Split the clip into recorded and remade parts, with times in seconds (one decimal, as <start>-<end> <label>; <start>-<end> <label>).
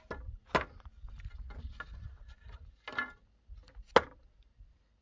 0.0-5.0 recorded